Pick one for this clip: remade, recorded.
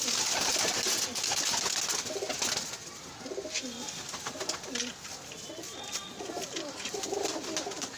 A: recorded